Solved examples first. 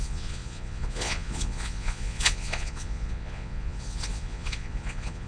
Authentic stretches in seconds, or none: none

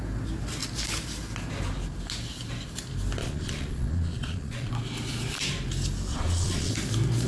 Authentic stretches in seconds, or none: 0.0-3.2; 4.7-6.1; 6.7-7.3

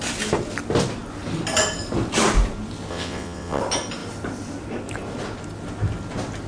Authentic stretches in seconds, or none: 0.0-2.9; 3.6-6.5